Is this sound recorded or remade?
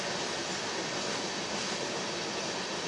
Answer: recorded